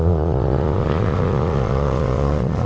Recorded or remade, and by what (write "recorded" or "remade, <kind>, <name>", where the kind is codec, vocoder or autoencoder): remade, vocoder, Vocos